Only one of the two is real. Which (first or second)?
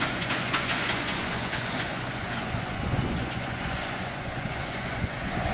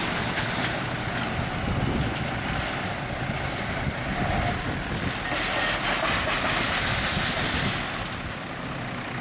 second